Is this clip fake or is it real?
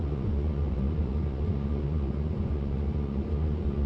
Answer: fake